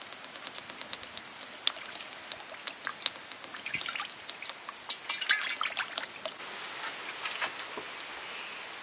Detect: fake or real real